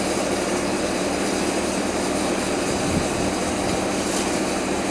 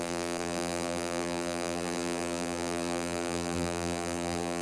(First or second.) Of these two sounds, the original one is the first